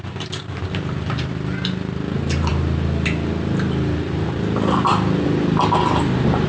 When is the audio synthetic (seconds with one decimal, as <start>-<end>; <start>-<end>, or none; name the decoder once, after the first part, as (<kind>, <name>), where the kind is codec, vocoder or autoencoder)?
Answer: none